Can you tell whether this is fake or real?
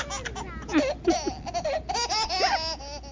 real